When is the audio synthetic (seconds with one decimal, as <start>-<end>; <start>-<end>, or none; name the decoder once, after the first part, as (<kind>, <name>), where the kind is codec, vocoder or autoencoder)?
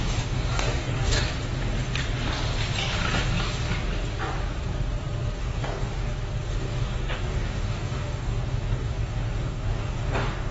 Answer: 0.0-1.3 (codec, DAC); 5.4-6.1; 6.6-10.5